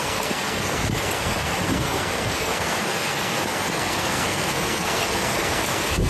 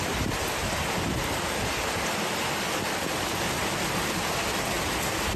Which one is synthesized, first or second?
first